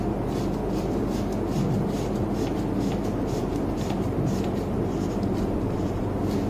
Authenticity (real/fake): real